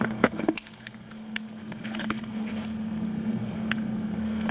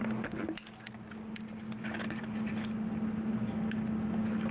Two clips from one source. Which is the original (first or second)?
second